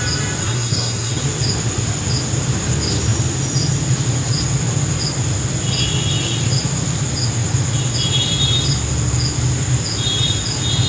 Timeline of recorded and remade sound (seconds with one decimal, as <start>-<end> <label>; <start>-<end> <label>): 0.0-0.4 recorded; 0.4-1.2 remade; 1.2-10.9 recorded